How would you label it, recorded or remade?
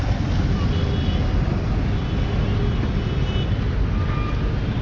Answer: recorded